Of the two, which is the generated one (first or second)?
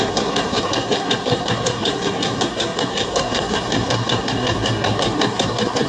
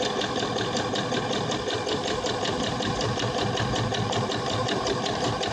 first